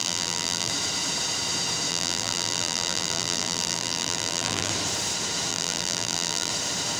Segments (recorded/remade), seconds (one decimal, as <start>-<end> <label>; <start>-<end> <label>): 0.0-0.7 remade; 0.7-1.9 recorded; 1.9-4.7 remade; 4.7-5.5 recorded; 5.5-6.5 remade; 6.5-7.0 recorded

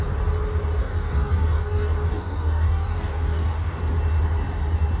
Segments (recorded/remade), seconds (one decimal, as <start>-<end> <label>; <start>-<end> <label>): 0.0-0.8 recorded; 0.8-3.8 remade; 3.8-5.0 recorded

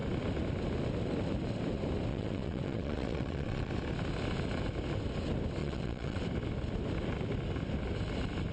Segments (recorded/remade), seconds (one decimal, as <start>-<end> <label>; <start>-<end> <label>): 0.0-2.1 recorded; 2.1-3.7 remade; 3.7-5.6 recorded; 5.6-6.2 remade; 6.2-8.5 recorded